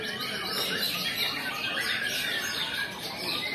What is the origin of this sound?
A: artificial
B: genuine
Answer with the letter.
A